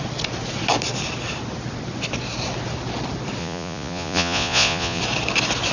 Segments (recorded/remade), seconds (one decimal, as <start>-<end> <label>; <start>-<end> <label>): 0.0-3.4 recorded; 3.4-5.0 remade; 5.0-5.7 recorded